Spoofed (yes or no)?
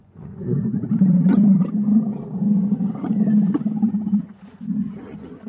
yes